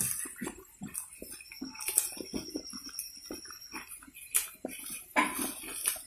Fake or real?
real